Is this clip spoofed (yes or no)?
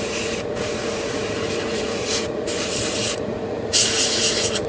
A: yes